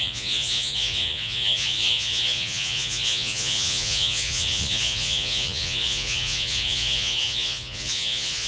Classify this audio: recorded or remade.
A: remade